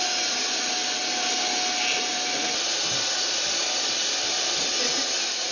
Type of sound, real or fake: real